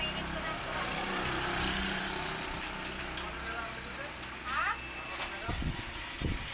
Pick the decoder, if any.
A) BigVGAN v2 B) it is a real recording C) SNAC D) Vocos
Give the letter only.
B